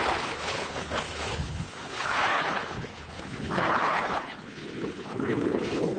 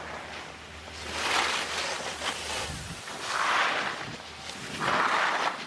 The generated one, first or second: first